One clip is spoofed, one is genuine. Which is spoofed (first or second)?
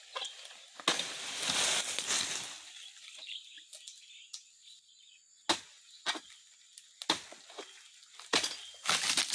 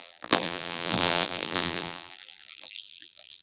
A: second